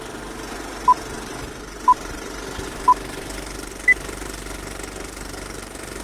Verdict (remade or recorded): recorded